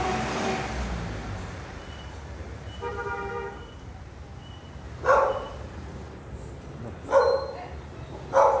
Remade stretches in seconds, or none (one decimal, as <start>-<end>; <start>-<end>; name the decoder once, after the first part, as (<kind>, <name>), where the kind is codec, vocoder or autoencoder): 1.2-5.9 (vocoder, BigVGAN v2)